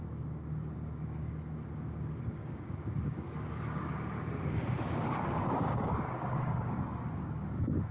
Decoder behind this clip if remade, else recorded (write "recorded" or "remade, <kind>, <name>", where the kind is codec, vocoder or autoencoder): remade, codec, DAC